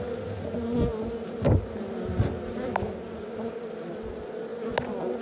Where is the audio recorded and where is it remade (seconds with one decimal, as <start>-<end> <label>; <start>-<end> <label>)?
0.0-5.2 recorded